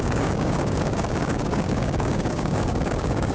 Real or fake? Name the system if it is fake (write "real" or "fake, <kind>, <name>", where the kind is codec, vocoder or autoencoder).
fake, codec, DAC